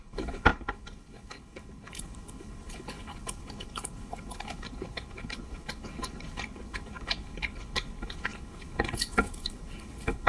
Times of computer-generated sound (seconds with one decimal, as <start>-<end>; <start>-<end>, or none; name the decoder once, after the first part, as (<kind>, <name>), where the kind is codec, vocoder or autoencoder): 0.0-10.3 (codec, HILCodec)